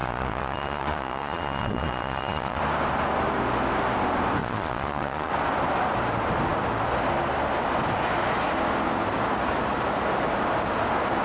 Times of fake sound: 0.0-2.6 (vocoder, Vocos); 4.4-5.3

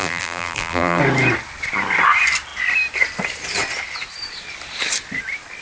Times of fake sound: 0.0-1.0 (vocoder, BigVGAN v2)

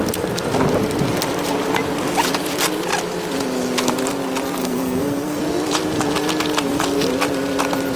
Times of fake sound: 4.6-5.4 (codec, SNAC)